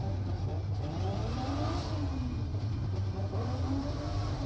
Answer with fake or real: fake